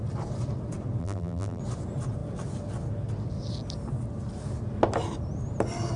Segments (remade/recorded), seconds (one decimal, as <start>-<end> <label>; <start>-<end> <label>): 0.0-1.0 recorded; 1.0-1.6 remade; 1.6-6.0 recorded